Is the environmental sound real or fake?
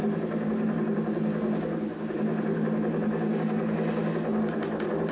real